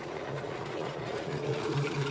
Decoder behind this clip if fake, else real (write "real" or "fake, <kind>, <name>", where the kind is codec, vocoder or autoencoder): fake, vocoder, Vocos